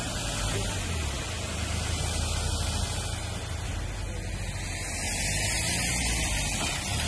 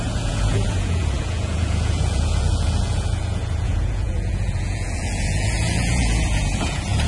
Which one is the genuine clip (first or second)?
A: first